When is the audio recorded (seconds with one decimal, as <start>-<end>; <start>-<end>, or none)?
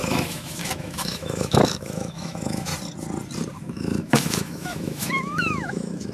2.7-3.6